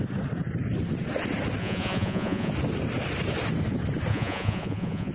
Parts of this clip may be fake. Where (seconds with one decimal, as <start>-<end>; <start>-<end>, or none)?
1.6-2.5; 4.1-5.1